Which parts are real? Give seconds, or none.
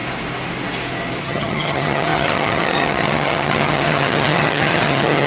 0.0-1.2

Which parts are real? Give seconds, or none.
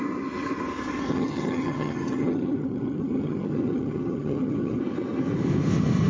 0.0-1.1; 4.8-6.1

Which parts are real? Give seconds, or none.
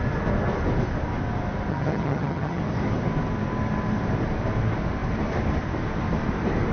0.0-1.7; 2.6-6.7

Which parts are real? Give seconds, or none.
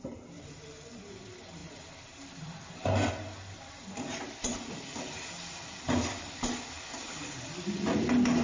0.0-8.4